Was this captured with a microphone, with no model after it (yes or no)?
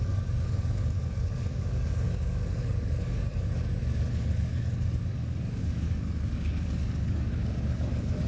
no